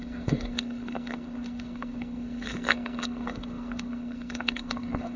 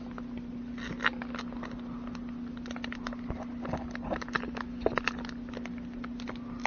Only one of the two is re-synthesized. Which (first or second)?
first